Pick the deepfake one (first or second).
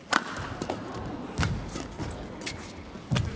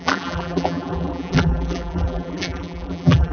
second